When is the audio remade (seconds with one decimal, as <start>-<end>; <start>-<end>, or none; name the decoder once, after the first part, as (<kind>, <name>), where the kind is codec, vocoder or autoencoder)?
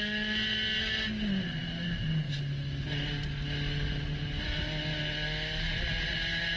none